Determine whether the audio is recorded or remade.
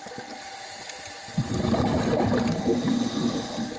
recorded